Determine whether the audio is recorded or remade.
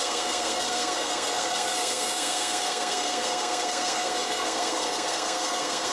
remade